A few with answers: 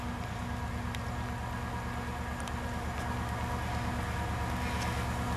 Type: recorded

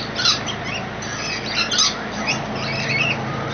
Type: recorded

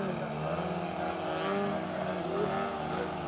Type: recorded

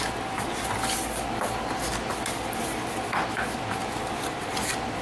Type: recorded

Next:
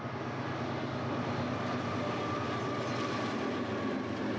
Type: recorded